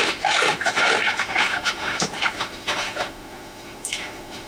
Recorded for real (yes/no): no